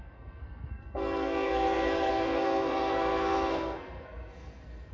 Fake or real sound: fake